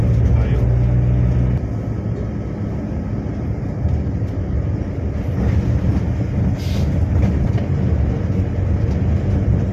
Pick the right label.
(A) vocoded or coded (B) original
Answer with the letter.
B